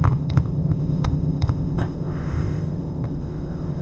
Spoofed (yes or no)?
yes